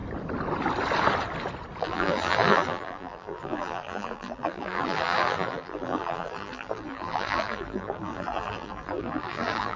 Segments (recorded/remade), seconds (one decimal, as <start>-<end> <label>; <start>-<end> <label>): 0.0-1.8 recorded; 1.8-9.8 remade